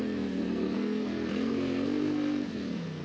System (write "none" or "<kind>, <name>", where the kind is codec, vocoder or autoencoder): codec, SNAC